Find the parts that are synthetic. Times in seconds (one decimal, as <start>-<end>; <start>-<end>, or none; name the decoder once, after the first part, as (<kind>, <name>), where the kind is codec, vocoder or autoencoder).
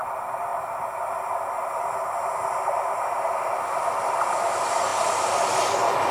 none